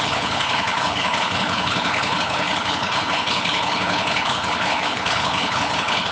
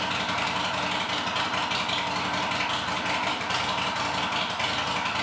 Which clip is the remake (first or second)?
first